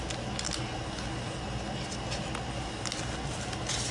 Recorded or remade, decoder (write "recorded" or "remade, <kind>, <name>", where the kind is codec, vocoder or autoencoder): recorded